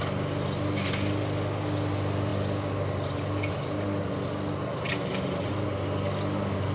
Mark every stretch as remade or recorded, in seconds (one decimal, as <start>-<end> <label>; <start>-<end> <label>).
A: 0.0-6.7 recorded